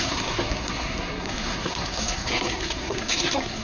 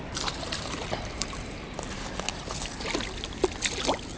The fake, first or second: first